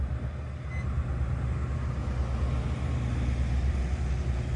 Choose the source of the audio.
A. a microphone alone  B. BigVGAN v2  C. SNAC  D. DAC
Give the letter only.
A